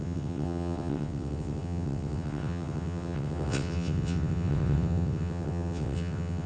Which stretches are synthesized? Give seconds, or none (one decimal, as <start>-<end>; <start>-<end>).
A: 0.0-6.5